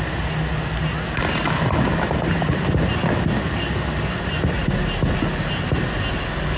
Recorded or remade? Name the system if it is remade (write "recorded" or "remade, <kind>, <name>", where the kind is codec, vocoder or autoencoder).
recorded